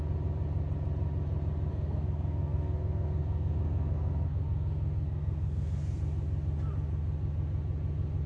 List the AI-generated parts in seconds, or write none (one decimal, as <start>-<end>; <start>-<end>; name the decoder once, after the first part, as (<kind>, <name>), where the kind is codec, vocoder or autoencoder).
1.7-6.0 (codec, SNAC)